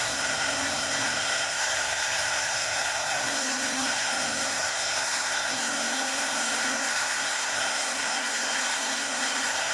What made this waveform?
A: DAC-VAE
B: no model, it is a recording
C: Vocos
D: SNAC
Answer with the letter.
D